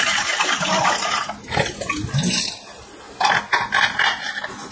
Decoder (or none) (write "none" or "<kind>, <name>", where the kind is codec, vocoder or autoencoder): none